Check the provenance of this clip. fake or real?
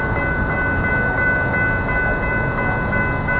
real